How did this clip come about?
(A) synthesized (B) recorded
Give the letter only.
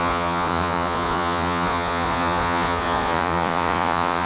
A